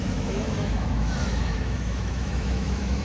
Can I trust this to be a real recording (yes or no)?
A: no